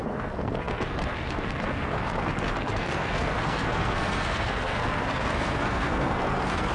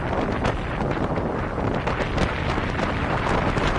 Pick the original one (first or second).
second